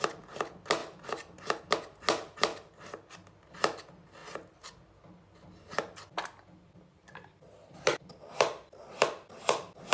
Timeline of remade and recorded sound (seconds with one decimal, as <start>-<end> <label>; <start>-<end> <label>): 0.0-9.9 recorded